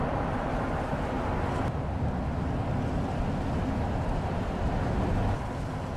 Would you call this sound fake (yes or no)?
no